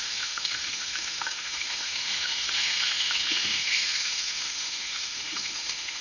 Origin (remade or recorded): remade